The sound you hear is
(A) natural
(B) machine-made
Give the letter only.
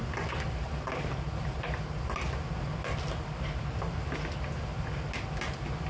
A